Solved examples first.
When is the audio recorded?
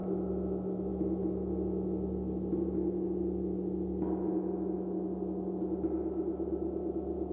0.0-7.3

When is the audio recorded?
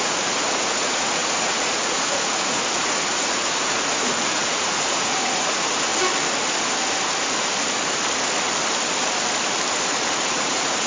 5.9-9.9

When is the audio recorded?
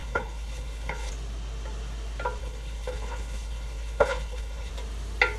1.1-2.4; 4.7-5.4